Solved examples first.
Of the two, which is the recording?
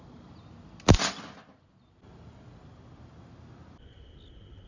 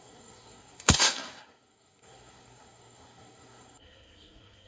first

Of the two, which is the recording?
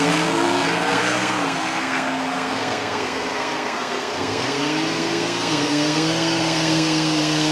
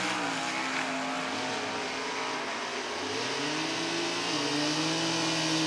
second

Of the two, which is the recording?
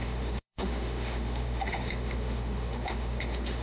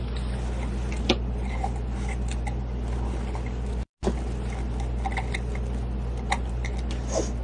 second